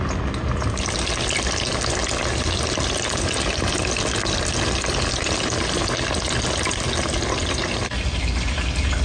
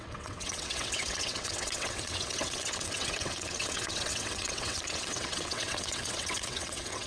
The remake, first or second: second